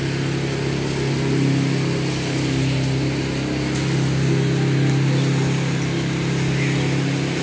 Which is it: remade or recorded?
recorded